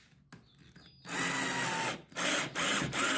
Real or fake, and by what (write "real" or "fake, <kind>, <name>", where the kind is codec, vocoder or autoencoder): real